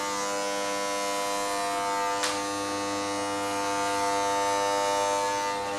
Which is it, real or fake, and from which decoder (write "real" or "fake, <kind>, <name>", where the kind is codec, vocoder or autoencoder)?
real